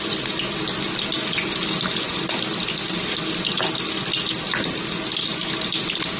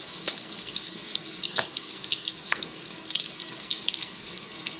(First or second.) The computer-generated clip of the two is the second